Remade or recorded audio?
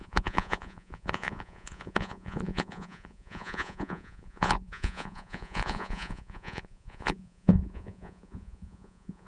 remade